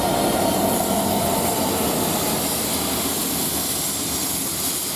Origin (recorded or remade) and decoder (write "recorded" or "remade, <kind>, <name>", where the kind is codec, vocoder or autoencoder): recorded